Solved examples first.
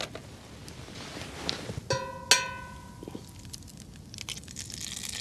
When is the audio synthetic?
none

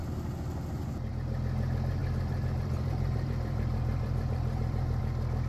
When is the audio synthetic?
2.0-5.0 (vocoder, BigVGAN v2)